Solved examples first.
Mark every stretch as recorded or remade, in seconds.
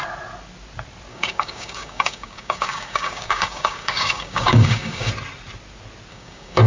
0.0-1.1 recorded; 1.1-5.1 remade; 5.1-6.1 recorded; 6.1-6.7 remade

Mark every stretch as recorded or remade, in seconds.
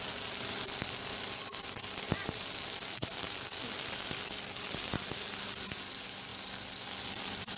0.0-7.6 recorded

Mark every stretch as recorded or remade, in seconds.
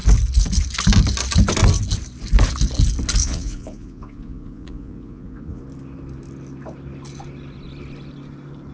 0.0-3.2 recorded; 3.2-5.6 remade; 5.6-8.7 recorded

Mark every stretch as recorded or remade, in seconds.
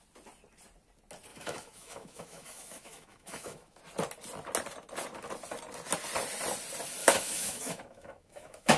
0.0-1.3 recorded; 1.3-3.8 remade; 3.8-7.0 recorded; 7.0-8.8 remade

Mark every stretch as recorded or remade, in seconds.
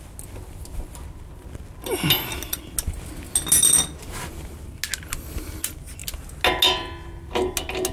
0.0-7.9 recorded